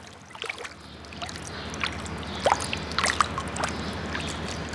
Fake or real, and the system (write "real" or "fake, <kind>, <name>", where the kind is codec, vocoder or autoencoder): real